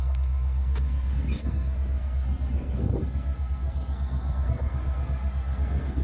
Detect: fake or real fake